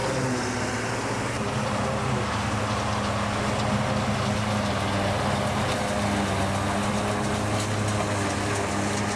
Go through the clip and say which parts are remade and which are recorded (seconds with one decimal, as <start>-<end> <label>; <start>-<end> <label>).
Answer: 0.0-9.2 recorded